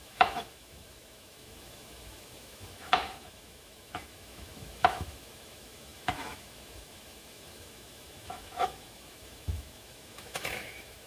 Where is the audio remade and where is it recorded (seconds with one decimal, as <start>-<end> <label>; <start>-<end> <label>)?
0.0-11.1 remade